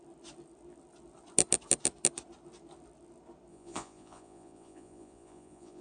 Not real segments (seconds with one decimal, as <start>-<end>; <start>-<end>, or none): 3.5-5.8